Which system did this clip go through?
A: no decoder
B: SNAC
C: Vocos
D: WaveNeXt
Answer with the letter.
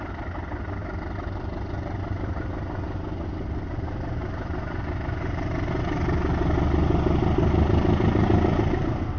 A